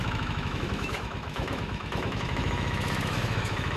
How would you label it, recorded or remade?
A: remade